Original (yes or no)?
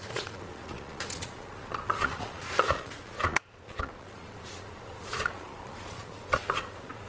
no